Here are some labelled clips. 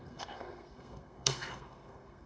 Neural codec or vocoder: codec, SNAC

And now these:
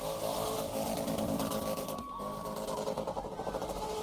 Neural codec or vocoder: none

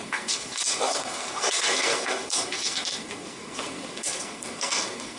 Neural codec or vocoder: codec, SNAC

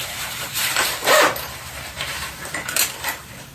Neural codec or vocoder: vocoder, BigVGAN v2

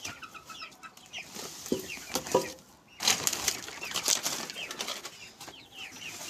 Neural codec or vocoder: none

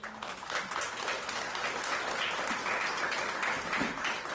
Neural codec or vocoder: none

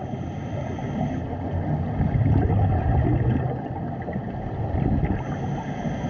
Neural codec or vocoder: none